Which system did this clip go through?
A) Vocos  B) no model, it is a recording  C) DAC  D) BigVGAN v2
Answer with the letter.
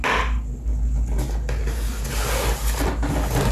B